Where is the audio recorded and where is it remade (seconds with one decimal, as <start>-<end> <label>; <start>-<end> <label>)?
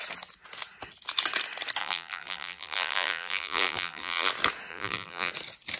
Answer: 0.0-1.8 recorded; 1.8-4.3 remade; 4.3-4.7 recorded; 4.7-5.3 remade; 5.3-5.8 recorded